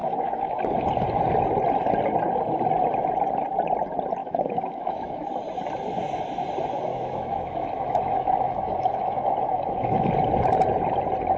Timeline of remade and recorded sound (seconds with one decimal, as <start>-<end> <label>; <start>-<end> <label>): 0.0-0.6 remade; 0.6-4.2 recorded; 4.2-5.3 remade; 5.3-6.9 recorded; 6.9-10.1 remade; 10.1-11.4 recorded